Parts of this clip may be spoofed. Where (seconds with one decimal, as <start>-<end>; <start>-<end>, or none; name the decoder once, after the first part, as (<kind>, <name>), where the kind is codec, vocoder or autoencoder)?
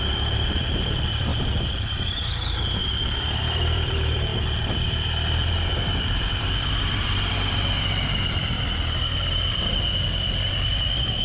0.0-1.3 (vocoder, BigVGAN v2); 3.4-11.2